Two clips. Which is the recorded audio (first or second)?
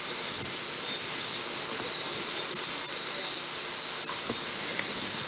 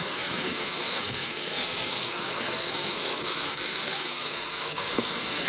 first